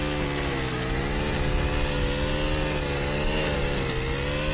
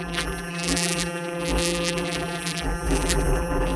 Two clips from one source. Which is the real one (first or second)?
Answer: first